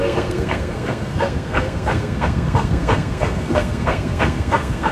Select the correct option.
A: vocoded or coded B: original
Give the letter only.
A